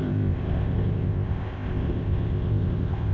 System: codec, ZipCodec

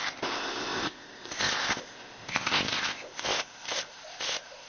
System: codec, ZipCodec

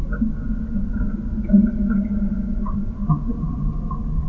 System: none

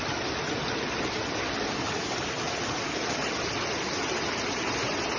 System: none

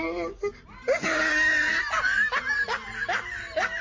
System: none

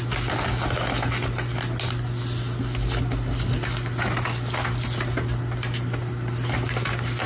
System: none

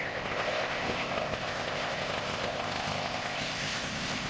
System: codec, ZipCodec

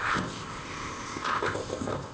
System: codec, ZipCodec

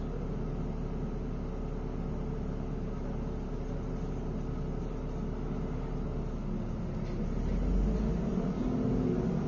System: none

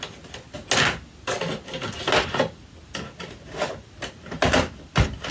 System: none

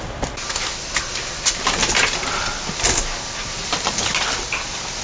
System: none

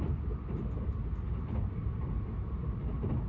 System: none